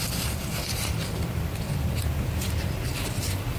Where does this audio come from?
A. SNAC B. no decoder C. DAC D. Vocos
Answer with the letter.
B